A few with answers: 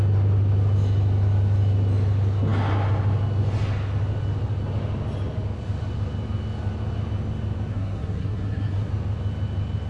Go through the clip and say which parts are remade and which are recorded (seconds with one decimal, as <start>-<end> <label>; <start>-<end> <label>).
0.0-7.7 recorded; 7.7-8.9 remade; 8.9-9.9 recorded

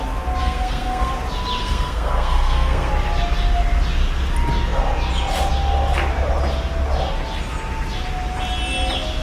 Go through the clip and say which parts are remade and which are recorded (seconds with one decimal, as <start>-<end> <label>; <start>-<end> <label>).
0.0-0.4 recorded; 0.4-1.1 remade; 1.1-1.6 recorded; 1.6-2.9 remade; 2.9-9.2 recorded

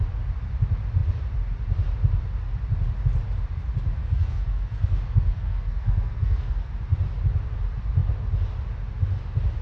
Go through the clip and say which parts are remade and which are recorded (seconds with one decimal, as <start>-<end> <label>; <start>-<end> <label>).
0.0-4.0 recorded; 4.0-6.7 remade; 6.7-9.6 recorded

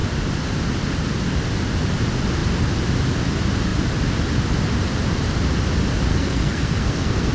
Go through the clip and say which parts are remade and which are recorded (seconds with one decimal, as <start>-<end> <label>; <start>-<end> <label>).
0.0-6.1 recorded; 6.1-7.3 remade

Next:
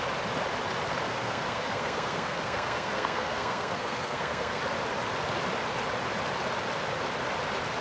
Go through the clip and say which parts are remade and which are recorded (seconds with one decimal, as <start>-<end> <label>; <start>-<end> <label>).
0.0-1.0 recorded; 1.0-4.6 remade; 4.6-7.8 recorded